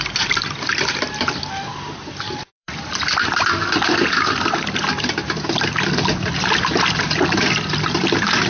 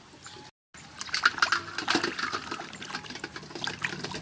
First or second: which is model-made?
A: first